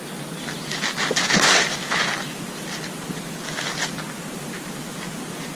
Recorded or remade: recorded